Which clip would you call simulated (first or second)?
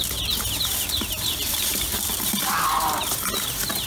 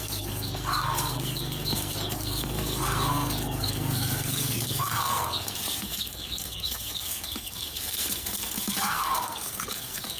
second